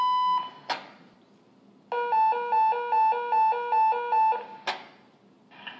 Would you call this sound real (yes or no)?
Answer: yes